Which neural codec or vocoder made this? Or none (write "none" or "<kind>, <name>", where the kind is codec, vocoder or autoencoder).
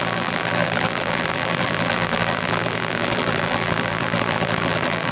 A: vocoder, BigVGAN v2